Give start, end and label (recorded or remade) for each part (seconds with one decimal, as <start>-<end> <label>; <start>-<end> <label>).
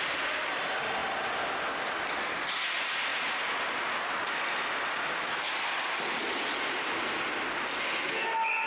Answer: 0.0-8.7 recorded